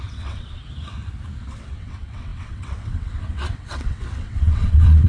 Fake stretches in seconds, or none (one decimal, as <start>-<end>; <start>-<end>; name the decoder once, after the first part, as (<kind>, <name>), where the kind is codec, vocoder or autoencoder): 0.0-0.6 (vocoder, WaveNeXt); 1.4-5.1